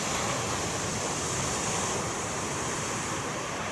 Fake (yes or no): yes